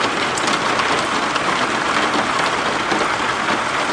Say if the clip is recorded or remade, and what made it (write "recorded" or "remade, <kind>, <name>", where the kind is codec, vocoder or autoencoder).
recorded